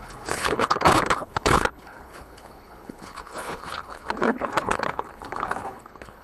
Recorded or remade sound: remade